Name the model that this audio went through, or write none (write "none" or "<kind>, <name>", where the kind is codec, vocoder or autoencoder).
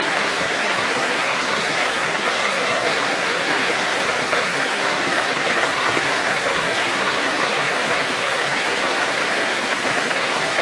codec, SNAC